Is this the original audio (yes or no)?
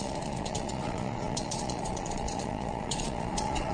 no